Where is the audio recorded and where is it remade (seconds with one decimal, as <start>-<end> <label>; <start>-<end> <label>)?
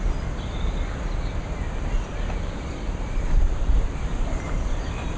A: 0.0-2.1 recorded; 2.1-5.2 remade